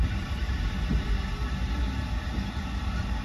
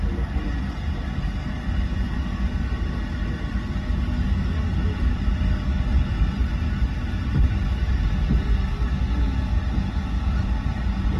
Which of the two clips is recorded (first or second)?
second